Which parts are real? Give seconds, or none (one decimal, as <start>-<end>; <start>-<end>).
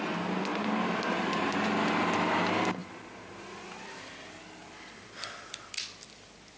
0.0-2.8; 4.1-4.6; 5.5-6.6